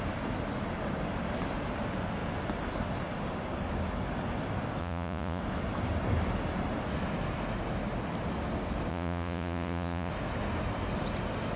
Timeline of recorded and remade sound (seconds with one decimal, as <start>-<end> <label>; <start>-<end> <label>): 0.0-4.8 recorded; 4.8-5.4 remade; 5.4-8.9 recorded; 8.9-10.1 remade; 10.1-11.6 recorded